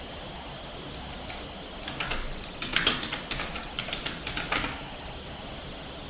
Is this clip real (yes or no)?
yes